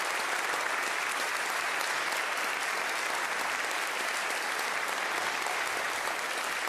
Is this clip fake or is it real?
real